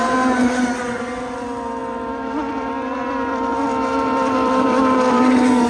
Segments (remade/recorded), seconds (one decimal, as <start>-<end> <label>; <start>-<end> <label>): 0.0-1.8 recorded; 1.8-5.2 remade; 5.2-5.7 recorded